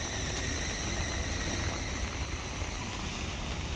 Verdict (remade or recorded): recorded